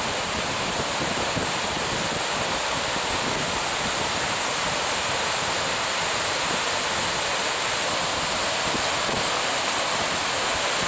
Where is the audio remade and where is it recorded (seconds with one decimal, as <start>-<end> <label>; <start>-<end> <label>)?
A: 0.0-10.9 recorded